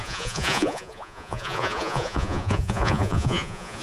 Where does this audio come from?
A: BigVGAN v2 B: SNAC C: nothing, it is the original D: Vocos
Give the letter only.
D